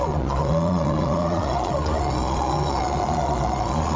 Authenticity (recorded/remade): remade